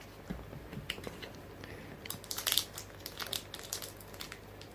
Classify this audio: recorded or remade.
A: recorded